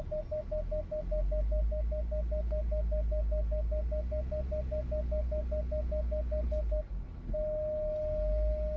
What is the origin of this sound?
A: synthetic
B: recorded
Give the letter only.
B